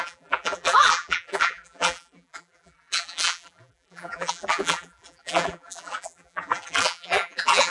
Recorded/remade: remade